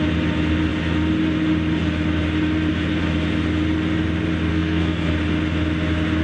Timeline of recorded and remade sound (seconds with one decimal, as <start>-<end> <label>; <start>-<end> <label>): 0.0-4.5 recorded; 4.5-5.1 remade; 5.1-6.2 recorded